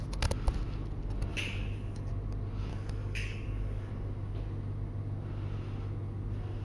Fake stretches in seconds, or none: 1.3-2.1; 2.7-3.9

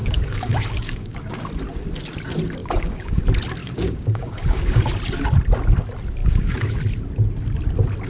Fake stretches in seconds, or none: 0.0-1.5; 2.6-3.2; 3.6-4.8; 6.2-6.8

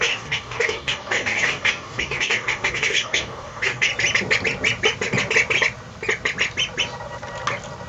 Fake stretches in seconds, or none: 0.0-3.9

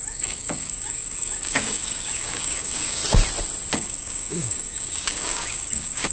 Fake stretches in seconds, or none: 0.0-3.0; 3.7-6.1

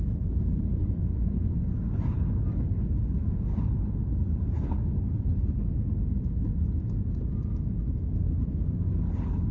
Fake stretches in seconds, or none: none

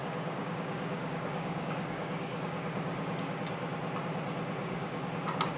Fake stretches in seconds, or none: 0.0-3.4; 4.6-5.1

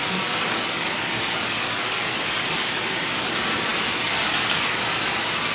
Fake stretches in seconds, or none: 0.0-2.7

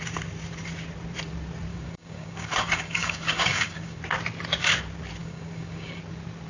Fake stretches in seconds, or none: 1.7-4.0; 5.2-6.0